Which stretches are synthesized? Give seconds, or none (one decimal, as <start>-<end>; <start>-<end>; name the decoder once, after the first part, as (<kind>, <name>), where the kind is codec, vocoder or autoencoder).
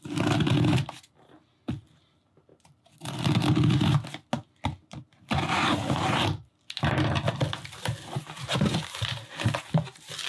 none